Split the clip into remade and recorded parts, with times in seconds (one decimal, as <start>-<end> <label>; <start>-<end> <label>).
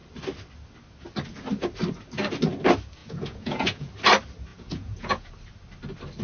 0.0-3.0 recorded; 3.0-3.9 remade; 3.9-4.5 recorded; 4.5-5.3 remade; 5.3-6.2 recorded